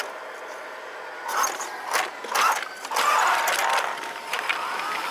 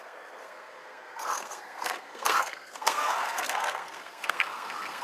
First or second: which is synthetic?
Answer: second